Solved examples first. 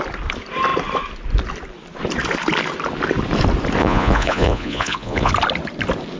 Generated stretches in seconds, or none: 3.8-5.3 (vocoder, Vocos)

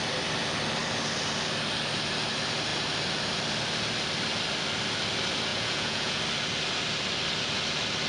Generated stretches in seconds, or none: 5.5-6.2 (vocoder, Vocos)